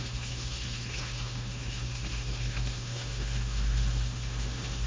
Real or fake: fake